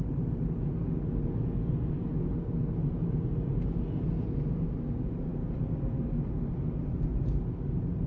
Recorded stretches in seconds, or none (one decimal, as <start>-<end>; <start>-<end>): 0.0-7.1